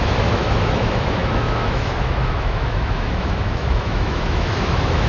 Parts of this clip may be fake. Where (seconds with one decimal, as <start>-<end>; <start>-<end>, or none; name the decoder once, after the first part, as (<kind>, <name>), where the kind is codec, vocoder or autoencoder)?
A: 0.0-5.1 (autoencoder, DAC-VAE)